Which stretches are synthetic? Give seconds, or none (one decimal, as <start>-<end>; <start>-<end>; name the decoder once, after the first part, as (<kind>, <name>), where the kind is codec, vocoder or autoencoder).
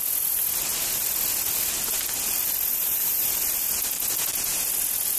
2.7-3.3 (vocoder, BigVGAN v2)